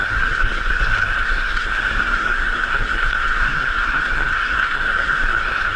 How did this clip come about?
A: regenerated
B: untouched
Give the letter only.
A